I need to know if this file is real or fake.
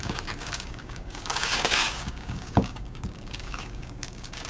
fake